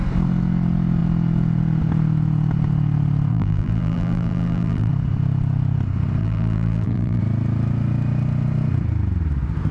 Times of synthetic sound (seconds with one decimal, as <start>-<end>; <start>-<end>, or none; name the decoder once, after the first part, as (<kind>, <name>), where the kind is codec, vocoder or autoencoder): 3.3-4.9 (vocoder, BigVGAN v2); 6.2-7.2